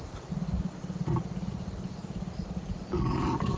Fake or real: real